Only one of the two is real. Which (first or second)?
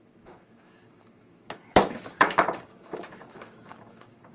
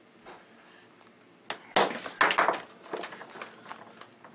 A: second